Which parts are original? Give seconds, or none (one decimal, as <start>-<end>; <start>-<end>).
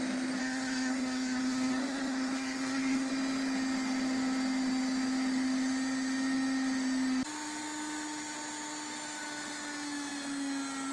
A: 0.0-0.4; 3.1-10.9